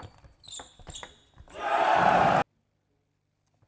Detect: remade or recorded recorded